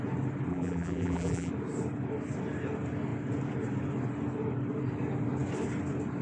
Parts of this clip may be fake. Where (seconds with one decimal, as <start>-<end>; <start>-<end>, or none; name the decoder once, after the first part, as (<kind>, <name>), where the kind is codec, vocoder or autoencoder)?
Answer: 0.5-1.5 (vocoder, BigVGAN v2)